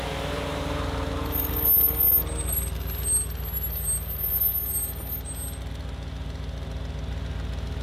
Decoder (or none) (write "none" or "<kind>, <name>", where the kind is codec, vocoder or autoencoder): none